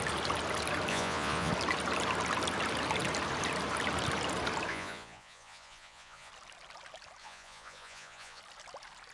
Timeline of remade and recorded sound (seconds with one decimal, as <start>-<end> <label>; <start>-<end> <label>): 0.0-0.9 recorded; 0.9-1.5 remade; 1.5-4.7 recorded; 4.7-6.3 remade; 6.3-7.2 recorded; 7.2-8.4 remade; 8.4-9.1 recorded